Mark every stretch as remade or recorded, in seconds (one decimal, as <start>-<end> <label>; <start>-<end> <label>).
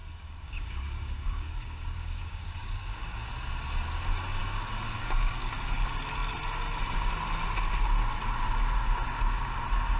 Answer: 0.0-3.3 remade; 3.3-4.4 recorded; 4.4-5.5 remade; 5.5-10.0 recorded